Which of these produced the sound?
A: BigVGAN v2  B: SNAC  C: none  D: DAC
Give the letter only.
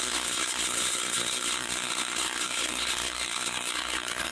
B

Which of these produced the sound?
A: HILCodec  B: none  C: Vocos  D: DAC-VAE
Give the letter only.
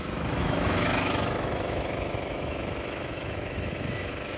D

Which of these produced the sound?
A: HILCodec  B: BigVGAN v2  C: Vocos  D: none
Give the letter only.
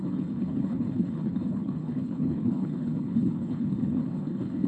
A